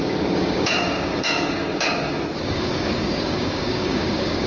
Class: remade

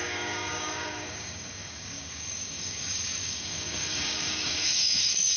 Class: remade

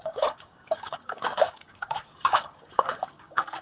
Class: remade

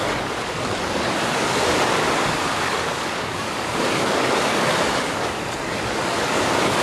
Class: remade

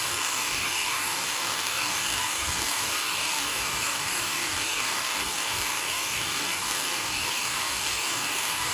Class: remade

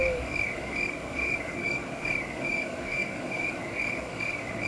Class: remade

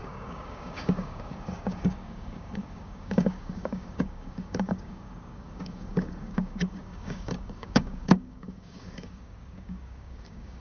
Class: remade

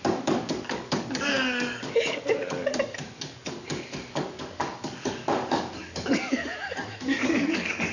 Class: remade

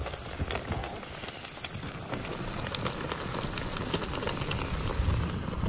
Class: recorded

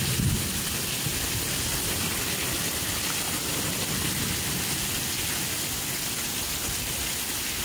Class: recorded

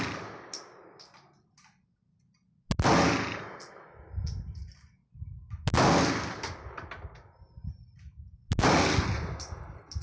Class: recorded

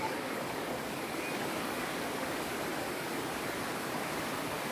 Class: remade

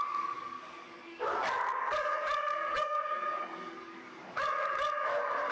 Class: remade